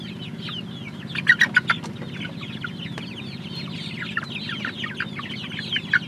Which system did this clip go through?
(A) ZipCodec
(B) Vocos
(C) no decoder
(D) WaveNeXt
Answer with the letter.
C